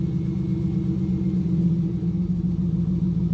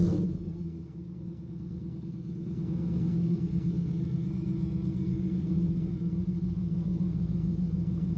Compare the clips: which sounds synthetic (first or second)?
second